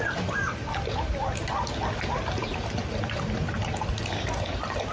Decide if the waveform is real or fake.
real